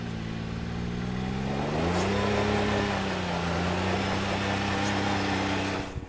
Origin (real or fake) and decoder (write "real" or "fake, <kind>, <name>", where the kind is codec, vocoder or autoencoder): real